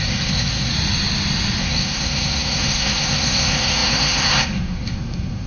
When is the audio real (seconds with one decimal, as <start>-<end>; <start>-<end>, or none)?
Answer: 0.7-1.6